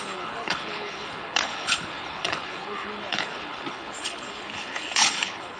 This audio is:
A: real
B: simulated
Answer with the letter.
B